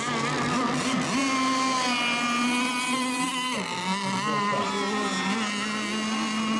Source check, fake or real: real